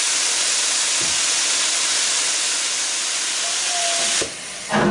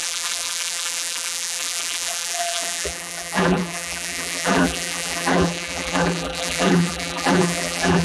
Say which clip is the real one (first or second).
first